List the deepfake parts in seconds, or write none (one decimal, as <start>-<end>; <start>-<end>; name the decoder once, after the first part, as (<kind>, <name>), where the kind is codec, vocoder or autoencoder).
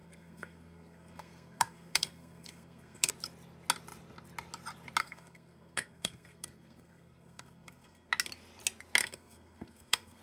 0.0-3.1 (codec, SNAC); 5.0-8.1; 9.0-10.2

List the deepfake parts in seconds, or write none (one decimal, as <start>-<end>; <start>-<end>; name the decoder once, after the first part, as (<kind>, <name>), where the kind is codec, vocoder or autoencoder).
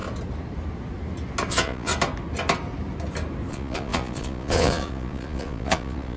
1.5-1.9 (vocoder, Vocos); 3.5-6.2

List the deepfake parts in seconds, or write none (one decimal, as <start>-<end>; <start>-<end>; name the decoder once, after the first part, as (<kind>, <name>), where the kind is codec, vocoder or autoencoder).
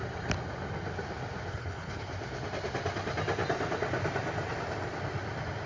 1.5-2.1 (codec, HILCodec)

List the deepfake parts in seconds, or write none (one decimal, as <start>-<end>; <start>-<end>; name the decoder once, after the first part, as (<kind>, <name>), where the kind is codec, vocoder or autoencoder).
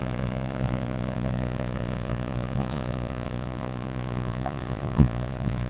0.0-5.7 (vocoder, Vocos)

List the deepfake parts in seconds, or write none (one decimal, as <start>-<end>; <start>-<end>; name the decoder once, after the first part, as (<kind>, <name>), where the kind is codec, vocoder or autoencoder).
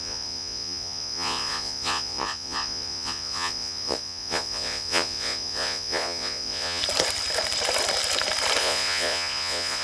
0.0-6.8 (vocoder, Vocos); 8.6-9.8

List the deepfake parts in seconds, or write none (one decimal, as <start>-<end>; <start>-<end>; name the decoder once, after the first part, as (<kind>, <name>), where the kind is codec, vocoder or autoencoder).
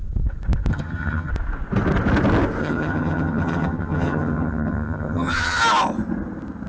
0.7-1.3 (vocoder, HiFi-GAN); 2.6-5.6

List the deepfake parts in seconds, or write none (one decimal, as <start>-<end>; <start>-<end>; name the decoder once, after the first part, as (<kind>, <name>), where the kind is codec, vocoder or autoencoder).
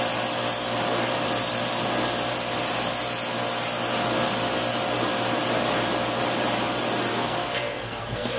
7.1-8.4 (codec, SNAC)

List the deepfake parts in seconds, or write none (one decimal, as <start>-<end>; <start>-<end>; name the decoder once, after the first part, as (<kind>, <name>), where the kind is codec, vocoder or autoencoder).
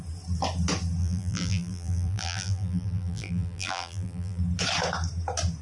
1.0-4.4 (vocoder, BigVGAN v2)